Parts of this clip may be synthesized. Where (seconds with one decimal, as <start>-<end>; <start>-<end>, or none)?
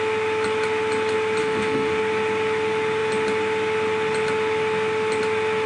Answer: 1.4-2.0